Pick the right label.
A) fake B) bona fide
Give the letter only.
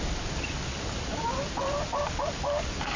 B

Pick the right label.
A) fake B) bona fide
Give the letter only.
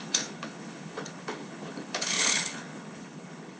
A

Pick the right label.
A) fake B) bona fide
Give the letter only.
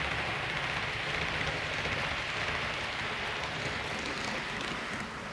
B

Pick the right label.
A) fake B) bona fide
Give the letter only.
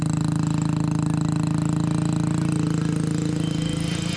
B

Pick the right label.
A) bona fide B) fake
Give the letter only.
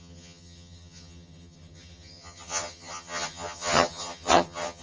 B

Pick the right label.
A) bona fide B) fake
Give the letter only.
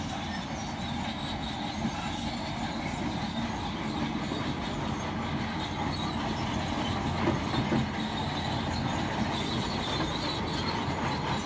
A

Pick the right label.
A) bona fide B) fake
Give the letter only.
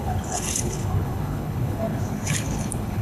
B